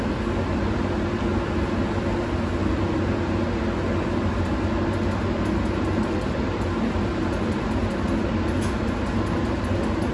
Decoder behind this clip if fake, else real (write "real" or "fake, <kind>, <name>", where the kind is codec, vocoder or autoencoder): real